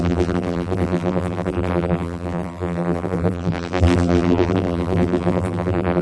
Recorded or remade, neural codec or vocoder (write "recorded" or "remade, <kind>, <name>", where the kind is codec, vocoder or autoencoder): remade, vocoder, BigVGAN v2